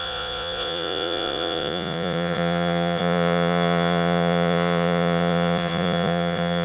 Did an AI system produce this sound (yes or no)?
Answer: yes